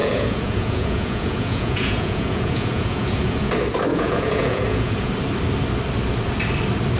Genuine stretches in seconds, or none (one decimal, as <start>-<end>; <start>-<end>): 3.5-3.9; 5.1-7.0

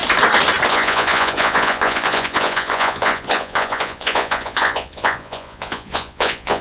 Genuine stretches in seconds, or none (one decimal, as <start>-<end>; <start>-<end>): 0.0-0.7

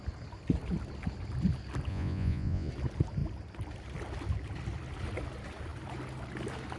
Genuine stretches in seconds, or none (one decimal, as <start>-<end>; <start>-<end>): 0.0-1.9; 2.7-6.8